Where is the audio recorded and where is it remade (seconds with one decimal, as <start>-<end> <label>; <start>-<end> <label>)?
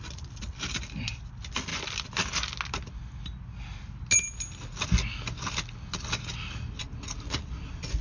0.0-8.0 recorded